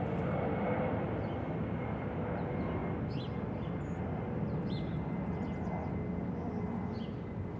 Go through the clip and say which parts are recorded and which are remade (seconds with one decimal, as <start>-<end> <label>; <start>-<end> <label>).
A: 0.0-7.6 recorded